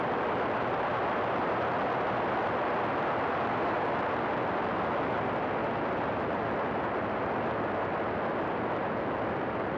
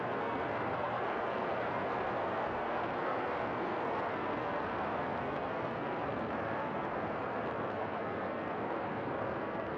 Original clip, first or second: first